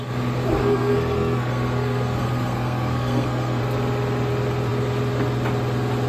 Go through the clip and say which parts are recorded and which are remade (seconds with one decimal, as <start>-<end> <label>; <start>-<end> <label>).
0.0-0.6 recorded; 0.6-3.6 remade; 3.6-6.1 recorded